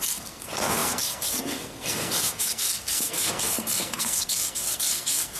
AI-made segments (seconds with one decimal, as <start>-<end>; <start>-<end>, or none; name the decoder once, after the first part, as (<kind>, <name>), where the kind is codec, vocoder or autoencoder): 0.0-5.4 (codec, SNAC)

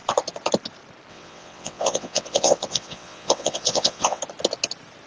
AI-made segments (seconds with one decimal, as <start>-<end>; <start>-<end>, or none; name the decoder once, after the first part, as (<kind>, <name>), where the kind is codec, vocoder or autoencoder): 1.1-4.2 (vocoder, WaveNeXt)

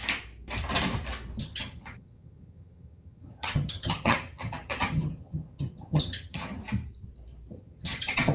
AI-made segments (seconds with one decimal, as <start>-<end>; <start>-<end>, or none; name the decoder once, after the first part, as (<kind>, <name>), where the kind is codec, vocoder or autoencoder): 1.4-6.6 (vocoder, HiFi-GAN); 7.5-8.3

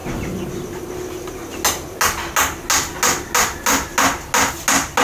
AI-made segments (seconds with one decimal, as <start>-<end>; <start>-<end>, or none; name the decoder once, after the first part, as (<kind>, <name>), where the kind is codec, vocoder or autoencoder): none

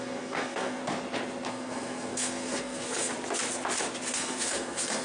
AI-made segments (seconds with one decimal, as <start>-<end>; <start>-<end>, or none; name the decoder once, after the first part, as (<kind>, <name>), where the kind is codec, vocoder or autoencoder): 0.0-0.8 (codec, SNAC); 1.5-3.1; 4.1-5.0

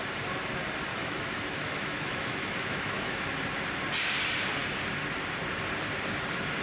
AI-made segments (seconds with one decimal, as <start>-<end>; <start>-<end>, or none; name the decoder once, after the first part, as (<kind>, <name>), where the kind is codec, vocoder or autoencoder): 0.9-3.3 (autoencoder, DAC-VAE)